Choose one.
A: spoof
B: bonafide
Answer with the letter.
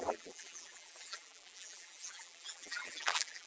A